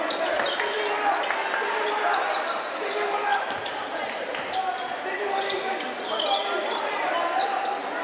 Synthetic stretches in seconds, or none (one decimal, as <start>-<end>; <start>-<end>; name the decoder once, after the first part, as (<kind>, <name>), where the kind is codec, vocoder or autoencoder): none

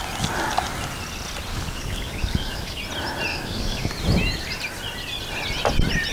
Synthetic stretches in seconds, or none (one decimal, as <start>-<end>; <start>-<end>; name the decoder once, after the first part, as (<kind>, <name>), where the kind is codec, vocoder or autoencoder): 1.5-2.8 (codec, DAC); 3.3-3.9

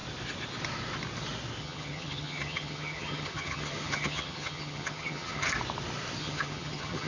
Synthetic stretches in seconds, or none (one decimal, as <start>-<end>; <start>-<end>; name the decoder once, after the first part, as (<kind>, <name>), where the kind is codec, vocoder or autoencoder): 1.6-5.5 (vocoder, HiFi-GAN); 6.2-7.1

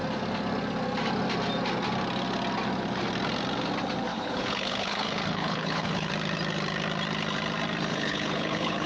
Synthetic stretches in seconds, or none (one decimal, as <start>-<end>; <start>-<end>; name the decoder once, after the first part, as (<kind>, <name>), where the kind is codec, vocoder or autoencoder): 4.1-6.1 (codec, HILCodec); 7.9-8.9